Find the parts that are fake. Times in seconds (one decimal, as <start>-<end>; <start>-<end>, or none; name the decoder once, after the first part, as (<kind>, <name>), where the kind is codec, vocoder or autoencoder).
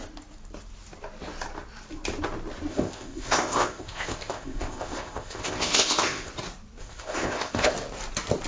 2.7-6.3 (codec, ZipCodec); 6.8-7.7